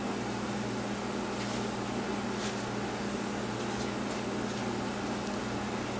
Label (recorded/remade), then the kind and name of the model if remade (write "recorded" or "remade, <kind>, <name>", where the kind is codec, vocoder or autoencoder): recorded